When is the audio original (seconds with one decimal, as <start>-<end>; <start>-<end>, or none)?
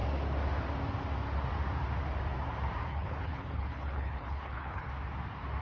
0.0-2.9; 4.9-5.6